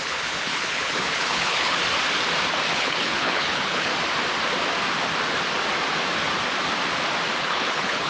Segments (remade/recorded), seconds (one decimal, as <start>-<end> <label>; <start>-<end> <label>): 0.0-1.8 remade; 1.8-2.7 recorded; 2.7-3.9 remade; 3.9-7.4 recorded; 7.4-8.1 remade